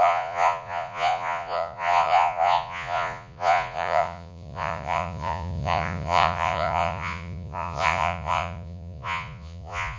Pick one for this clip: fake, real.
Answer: fake